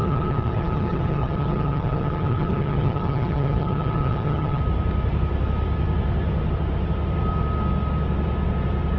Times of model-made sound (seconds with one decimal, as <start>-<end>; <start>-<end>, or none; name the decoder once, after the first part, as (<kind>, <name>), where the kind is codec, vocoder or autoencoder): 0.0-4.6 (vocoder, HiFi-GAN)